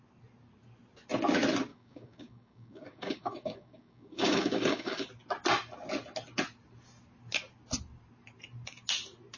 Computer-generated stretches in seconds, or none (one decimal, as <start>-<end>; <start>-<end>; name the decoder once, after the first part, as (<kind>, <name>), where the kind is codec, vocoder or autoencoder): 1.7-5.1 (codec, DAC)